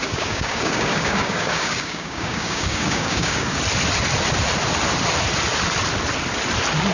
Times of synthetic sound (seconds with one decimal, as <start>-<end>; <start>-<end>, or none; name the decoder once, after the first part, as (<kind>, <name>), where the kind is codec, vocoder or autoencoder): 0.0-3.6 (codec, DAC)